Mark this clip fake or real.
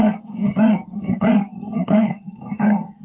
fake